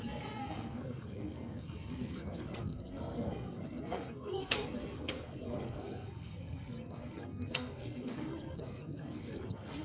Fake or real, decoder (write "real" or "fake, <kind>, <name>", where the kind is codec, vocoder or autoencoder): fake, codec, SNAC